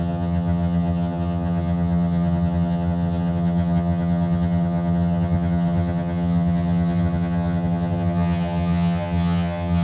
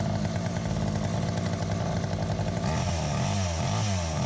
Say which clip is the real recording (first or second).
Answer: second